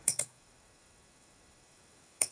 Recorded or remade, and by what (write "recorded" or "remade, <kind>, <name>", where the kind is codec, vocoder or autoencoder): remade, autoencoder, DAC-VAE